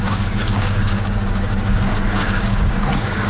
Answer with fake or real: fake